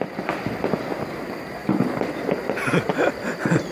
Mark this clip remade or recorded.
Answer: recorded